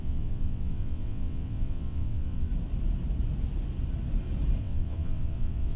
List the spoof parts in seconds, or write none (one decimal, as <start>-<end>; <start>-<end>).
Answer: 0.0-2.5; 4.6-5.8